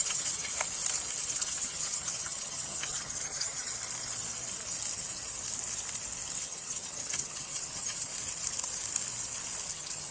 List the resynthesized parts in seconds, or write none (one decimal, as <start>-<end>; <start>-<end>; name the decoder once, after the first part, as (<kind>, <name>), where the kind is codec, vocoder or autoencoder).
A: 0.0-0.5 (vocoder, HiFi-GAN); 1.2-3.7; 6.4-8.1; 9.7-10.1